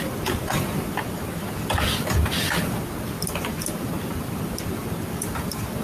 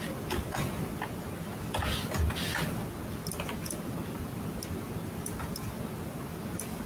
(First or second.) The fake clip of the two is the first